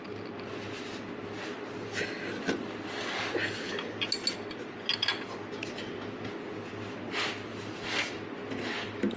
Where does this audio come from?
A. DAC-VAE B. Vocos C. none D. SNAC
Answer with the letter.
C